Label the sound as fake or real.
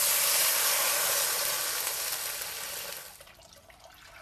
real